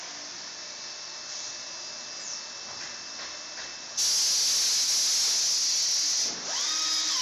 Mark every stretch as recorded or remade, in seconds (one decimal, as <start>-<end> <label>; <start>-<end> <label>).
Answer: 0.0-7.2 recorded